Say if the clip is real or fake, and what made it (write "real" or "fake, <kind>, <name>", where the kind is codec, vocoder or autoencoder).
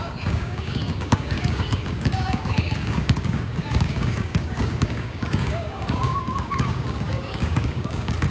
fake, codec, DAC